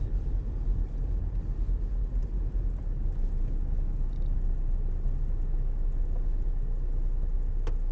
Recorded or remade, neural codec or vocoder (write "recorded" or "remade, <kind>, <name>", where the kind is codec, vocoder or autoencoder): recorded